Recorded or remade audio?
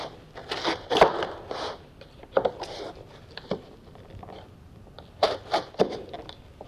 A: recorded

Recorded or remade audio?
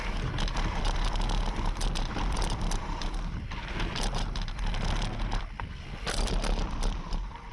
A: recorded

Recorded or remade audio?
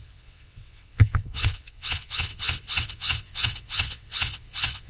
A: remade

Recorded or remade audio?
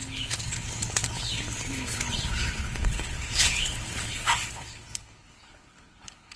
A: remade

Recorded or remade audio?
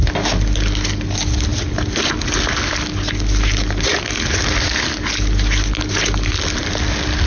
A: recorded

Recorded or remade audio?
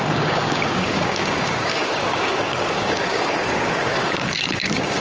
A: remade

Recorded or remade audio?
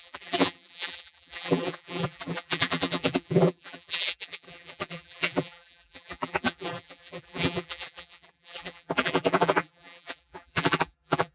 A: remade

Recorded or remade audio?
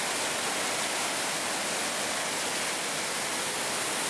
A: recorded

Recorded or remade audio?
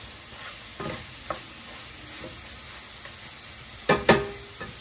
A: recorded